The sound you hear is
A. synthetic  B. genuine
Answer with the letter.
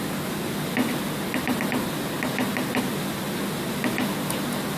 B